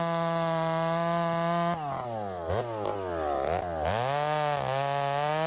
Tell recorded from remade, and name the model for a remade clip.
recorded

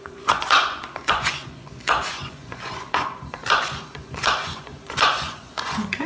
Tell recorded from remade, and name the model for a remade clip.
remade, vocoder, Vocos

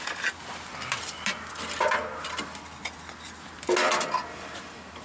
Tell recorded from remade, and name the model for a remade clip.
recorded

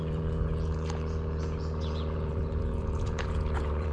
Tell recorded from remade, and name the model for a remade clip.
remade, vocoder, Vocos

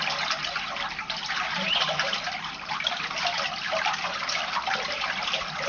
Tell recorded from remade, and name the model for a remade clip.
recorded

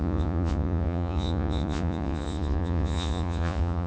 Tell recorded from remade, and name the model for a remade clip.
remade, vocoder, Vocos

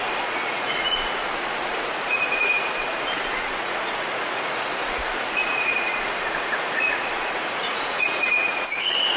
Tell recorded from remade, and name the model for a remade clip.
remade, vocoder, Vocos